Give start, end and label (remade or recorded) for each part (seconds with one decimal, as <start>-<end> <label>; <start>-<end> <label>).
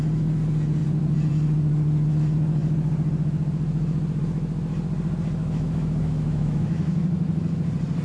0.0-5.4 recorded; 5.4-7.0 remade; 7.0-8.0 recorded